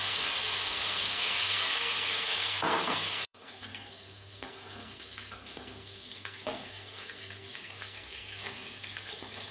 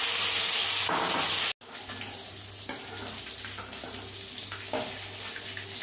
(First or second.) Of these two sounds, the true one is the second